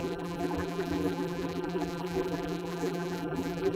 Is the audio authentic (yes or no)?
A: no